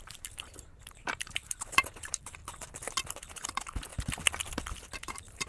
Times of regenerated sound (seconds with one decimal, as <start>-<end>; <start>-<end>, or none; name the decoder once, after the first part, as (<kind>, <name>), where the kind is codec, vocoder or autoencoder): 0.0-2.4 (vocoder, BigVGAN v2); 3.1-3.9; 4.7-5.5